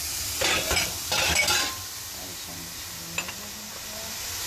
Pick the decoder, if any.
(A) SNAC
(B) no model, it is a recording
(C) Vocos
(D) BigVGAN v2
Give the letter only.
B